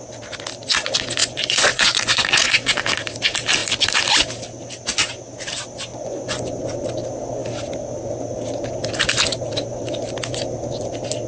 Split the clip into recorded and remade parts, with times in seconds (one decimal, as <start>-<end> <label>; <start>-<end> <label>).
0.0-1.2 recorded; 1.2-2.8 remade; 2.8-5.9 recorded; 5.9-6.6 remade; 6.6-11.3 recorded